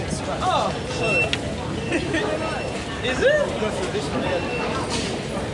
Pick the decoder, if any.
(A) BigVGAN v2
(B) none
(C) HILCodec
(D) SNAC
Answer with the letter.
B